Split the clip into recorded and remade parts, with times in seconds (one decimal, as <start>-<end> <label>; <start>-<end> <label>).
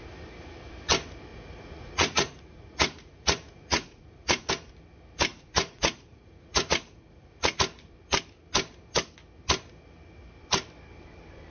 0.0-1.3 recorded; 1.3-4.5 remade; 4.5-5.3 recorded; 5.3-7.6 remade; 7.6-11.5 recorded